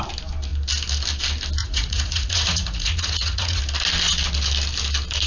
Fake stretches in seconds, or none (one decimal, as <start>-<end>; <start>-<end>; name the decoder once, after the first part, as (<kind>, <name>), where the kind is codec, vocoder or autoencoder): 1.6-3.6 (vocoder, Vocos)